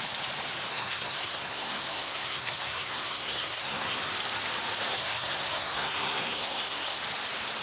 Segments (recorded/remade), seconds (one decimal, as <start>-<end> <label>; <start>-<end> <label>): 0.0-0.7 recorded; 0.7-4.1 remade; 4.1-4.9 recorded; 4.9-7.0 remade; 7.0-7.6 recorded